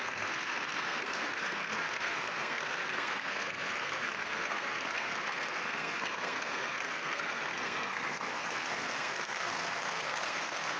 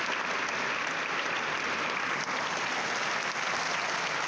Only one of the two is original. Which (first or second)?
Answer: second